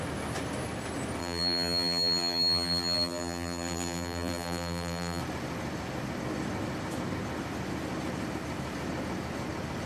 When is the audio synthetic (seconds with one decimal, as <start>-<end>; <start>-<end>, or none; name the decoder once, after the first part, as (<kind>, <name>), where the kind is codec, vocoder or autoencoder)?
1.2-5.2 (vocoder, BigVGAN v2)